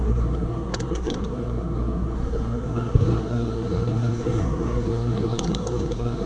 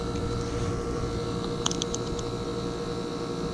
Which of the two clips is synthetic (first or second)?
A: first